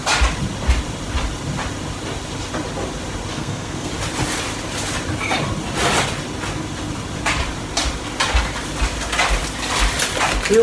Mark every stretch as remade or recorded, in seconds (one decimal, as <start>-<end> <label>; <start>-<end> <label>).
0.0-3.3 recorded; 3.3-3.9 remade; 3.9-10.6 recorded